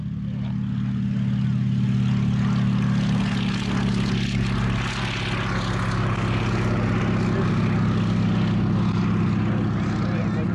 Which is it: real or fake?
real